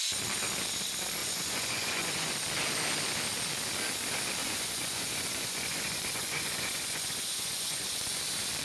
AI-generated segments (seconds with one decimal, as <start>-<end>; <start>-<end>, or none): 1.2-2.3; 4.4-8.2